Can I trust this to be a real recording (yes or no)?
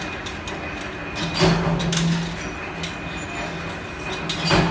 yes